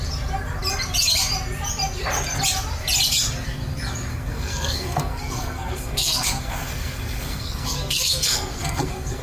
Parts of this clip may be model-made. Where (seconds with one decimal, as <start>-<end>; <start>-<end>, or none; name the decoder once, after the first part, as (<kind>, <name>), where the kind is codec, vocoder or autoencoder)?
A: 4.1-9.2 (codec, SNAC)